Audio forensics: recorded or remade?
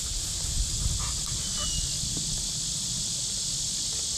recorded